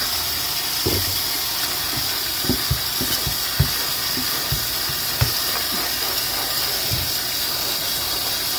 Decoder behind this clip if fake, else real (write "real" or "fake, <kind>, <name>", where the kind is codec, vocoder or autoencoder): real